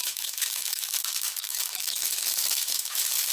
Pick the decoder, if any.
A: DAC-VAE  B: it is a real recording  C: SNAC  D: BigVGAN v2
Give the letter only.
A